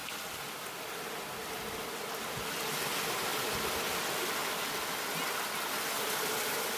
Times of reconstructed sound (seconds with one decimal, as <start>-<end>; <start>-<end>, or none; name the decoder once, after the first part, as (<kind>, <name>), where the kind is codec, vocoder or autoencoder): none